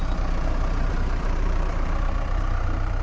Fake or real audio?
fake